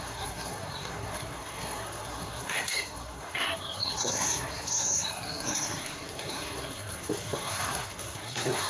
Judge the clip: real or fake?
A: fake